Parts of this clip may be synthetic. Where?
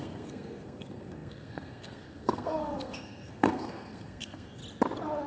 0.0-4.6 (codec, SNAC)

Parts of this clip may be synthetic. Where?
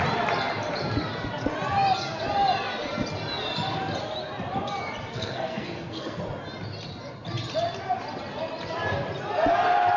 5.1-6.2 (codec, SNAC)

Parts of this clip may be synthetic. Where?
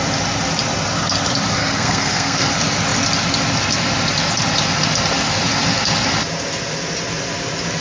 1.6-2.5 (codec, SNAC)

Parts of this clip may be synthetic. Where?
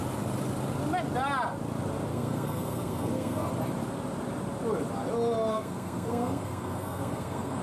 2.1-3.5 (codec, SNAC); 5.5-7.6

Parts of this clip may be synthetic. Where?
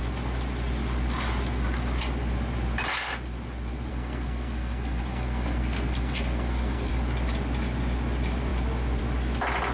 3.9-6.9 (codec, SNAC)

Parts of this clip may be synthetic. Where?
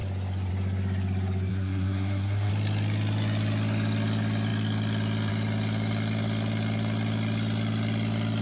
1.5-2.5 (codec, SNAC)